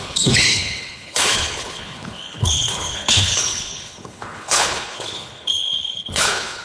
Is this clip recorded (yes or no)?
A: no